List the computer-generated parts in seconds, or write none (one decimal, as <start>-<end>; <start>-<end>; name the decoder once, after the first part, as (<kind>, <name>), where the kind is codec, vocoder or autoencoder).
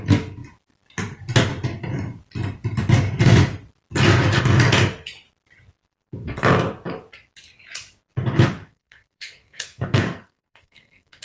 8.6-11.2 (codec, SNAC)